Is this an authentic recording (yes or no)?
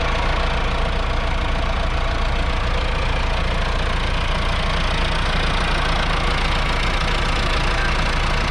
yes